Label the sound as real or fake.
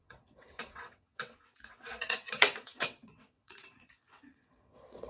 fake